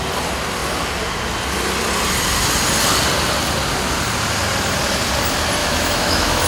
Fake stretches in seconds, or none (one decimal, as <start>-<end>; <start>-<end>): 5.6-6.5